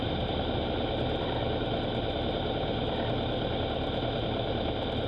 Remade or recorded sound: recorded